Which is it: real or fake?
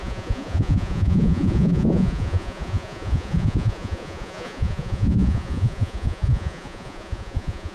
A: fake